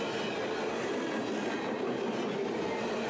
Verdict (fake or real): real